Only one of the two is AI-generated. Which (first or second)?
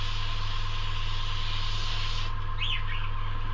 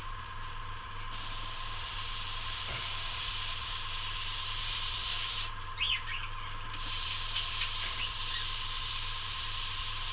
second